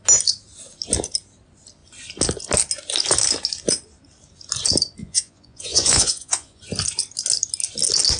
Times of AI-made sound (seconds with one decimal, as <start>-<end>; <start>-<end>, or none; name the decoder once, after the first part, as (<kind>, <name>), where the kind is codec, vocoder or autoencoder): 5.0-6.6 (vocoder, Vocos)